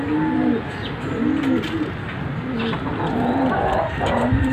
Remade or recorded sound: recorded